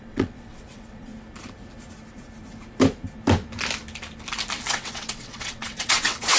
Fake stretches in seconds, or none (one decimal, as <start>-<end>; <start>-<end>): 0.0-1.1; 4.7-6.4